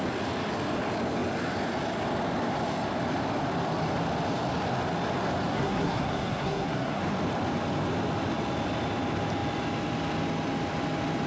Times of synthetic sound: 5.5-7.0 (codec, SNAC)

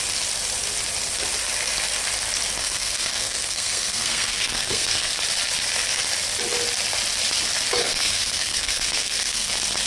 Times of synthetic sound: 2.6-5.2 (codec, SNAC); 7.8-9.5

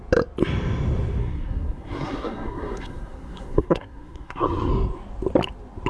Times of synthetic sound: 1.2-4.7 (codec, SNAC)

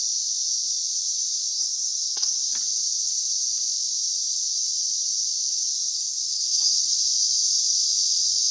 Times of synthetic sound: 1.5-2.5 (codec, SNAC); 5.7-7.0

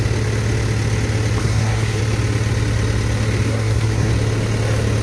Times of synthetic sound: 1.4-2.0 (codec, SNAC); 3.5-4.1

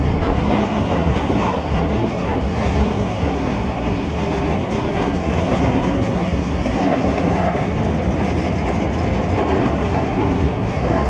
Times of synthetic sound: 0.0-7.8 (codec, SNAC); 9.6-11.1

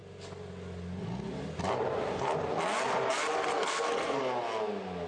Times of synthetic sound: 3.5-4.2 (codec, SNAC)